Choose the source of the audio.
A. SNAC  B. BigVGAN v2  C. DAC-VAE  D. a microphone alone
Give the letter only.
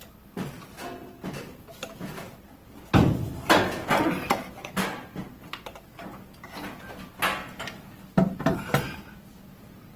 D